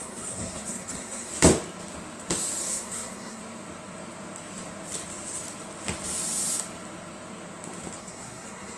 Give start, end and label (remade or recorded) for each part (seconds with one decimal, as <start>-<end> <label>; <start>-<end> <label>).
0.0-1.3 remade; 1.3-2.6 recorded; 2.6-3.4 remade; 3.4-8.0 recorded; 8.0-8.8 remade